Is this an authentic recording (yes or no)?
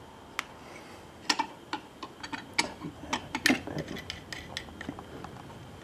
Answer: yes